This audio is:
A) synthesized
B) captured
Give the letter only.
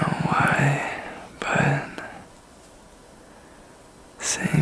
B